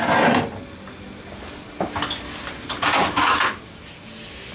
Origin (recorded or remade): recorded